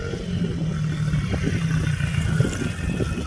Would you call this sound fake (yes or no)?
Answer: no